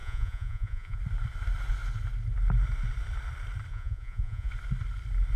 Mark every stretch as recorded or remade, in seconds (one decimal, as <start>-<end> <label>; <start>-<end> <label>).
0.0-1.0 remade; 1.0-3.7 recorded; 3.7-4.5 remade; 4.5-5.4 recorded